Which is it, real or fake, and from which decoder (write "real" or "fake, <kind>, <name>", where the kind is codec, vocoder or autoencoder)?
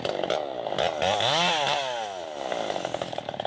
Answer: real